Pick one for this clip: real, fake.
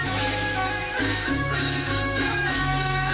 fake